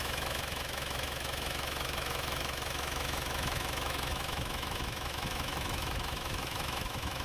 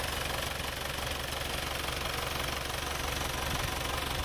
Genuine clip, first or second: second